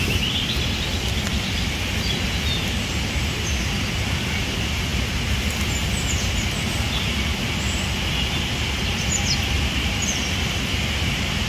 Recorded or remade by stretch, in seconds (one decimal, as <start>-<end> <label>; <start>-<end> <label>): 0.0-11.5 recorded